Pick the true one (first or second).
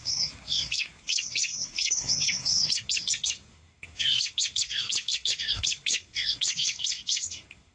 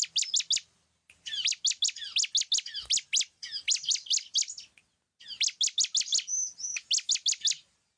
second